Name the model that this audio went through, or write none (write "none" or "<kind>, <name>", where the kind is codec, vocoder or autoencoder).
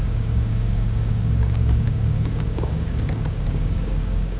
codec, DAC